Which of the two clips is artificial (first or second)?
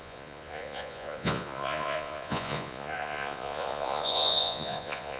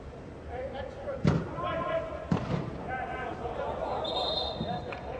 first